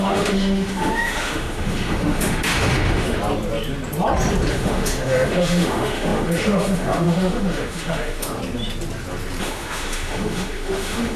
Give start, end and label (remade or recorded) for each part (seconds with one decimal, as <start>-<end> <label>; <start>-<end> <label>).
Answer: 0.0-3.2 remade; 3.2-4.5 recorded; 4.5-8.4 remade; 8.4-9.4 recorded; 9.4-11.2 remade